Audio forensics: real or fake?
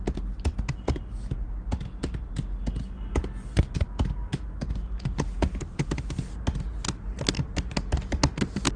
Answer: real